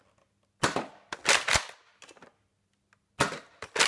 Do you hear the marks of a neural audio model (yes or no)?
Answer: no